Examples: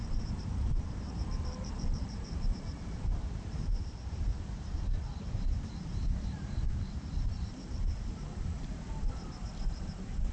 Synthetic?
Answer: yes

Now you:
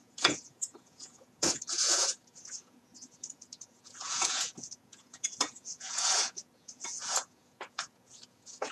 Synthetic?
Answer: yes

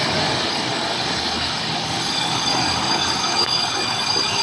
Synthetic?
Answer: yes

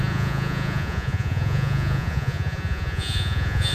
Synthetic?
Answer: yes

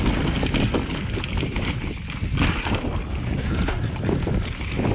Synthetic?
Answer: no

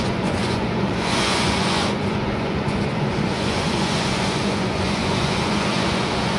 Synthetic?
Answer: yes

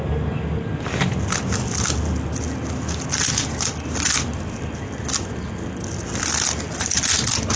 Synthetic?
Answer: no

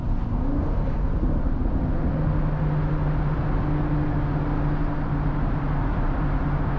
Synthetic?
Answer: no